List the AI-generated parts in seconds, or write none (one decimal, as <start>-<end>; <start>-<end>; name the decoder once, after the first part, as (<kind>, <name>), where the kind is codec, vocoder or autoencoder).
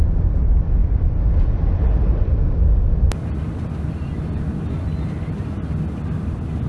none